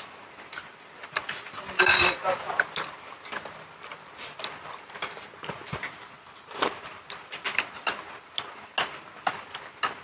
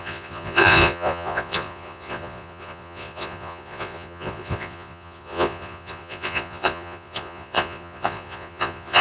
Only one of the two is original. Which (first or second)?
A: first